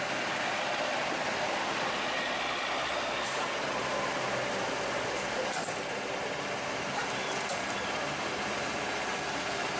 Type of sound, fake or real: real